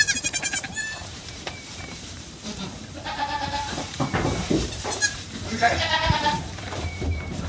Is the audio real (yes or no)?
no